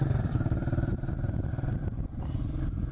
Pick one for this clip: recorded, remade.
remade